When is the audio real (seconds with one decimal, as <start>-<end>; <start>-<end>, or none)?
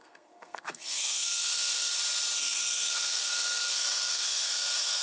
1.9-2.4